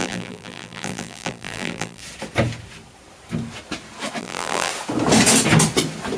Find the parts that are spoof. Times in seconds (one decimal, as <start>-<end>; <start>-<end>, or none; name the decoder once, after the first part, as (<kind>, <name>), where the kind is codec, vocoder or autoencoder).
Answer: 0.0-2.0 (vocoder, BigVGAN v2); 4.2-4.7